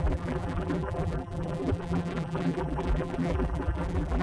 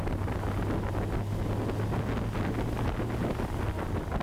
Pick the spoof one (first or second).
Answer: first